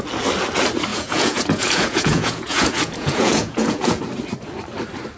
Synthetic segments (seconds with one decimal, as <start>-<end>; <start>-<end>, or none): 0.9-4.0